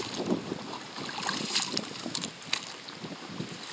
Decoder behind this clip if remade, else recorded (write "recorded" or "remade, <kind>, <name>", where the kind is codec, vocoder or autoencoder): recorded